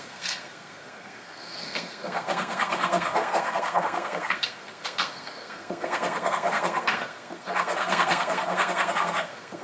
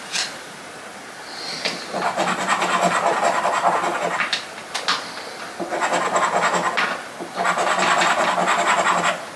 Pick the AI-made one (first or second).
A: first